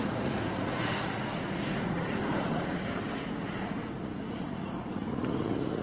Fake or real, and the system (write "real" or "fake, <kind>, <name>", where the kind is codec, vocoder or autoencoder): fake, vocoder, Vocos